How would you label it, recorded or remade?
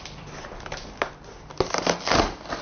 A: recorded